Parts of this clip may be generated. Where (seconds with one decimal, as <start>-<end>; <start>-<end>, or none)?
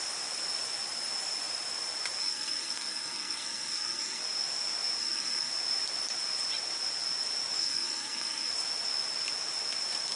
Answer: 2.2-4.2; 5.0-5.5; 7.6-8.5